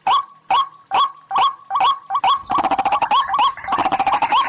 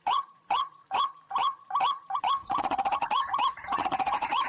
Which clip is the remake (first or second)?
second